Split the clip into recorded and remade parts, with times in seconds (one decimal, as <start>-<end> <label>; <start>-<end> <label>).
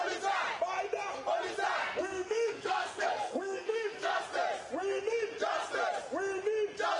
0.0-1.8 recorded; 1.8-4.2 remade; 4.2-7.0 recorded